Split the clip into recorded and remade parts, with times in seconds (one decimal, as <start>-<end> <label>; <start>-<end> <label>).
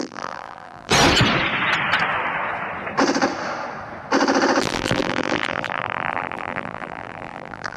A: 0.0-0.9 remade; 0.9-4.6 recorded; 4.6-7.8 remade